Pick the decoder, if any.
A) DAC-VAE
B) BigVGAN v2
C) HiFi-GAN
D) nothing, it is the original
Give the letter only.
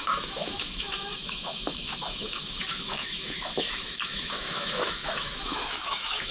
A